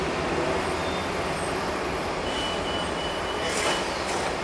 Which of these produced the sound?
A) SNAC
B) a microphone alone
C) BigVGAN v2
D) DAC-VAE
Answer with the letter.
C